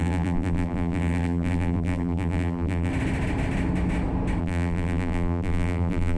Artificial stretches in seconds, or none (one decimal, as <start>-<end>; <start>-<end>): 0.0-2.9; 4.4-6.2